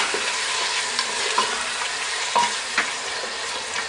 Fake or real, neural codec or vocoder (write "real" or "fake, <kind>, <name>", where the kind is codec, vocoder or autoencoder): real